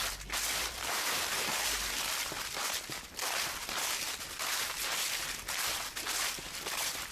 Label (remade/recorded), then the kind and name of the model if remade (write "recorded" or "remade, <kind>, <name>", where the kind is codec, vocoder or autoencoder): recorded